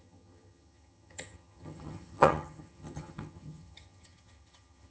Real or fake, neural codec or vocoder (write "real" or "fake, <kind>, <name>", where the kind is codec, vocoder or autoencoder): fake, vocoder, HiFi-GAN